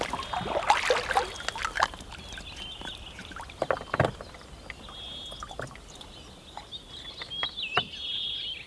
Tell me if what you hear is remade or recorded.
recorded